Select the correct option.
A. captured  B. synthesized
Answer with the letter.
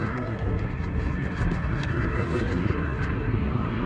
B